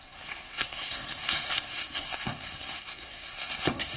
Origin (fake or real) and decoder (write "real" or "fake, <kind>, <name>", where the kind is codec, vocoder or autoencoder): fake, codec, SNAC